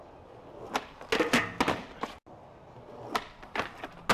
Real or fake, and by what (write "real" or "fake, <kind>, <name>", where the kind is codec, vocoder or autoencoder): real